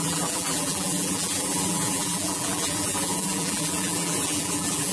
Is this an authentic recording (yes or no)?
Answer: no